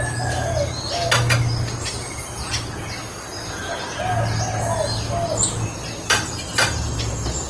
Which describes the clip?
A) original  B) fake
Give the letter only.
A